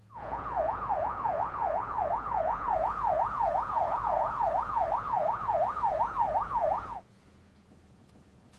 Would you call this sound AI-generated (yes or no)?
yes